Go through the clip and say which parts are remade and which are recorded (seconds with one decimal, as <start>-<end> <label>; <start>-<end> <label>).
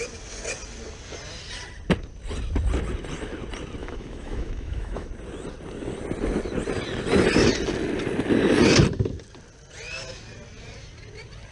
0.0-3.8 recorded; 3.8-5.1 remade; 5.1-11.5 recorded